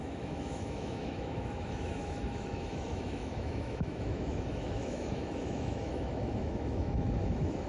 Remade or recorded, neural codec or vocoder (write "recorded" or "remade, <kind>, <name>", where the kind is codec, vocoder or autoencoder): remade, autoencoder, DAC-VAE